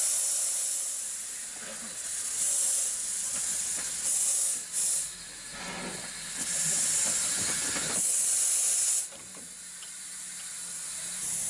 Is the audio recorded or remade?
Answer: recorded